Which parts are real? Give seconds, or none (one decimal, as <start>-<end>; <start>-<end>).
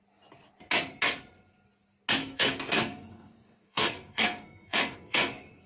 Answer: 0.0-2.2